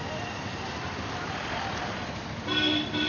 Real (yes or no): yes